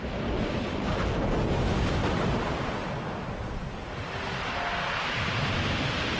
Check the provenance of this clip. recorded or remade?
recorded